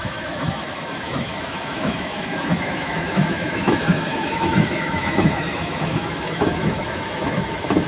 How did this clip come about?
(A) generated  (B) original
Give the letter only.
A